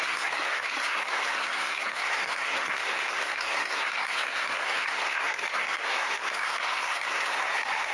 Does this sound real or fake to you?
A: fake